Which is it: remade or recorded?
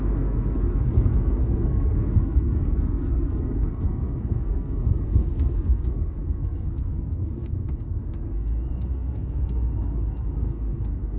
remade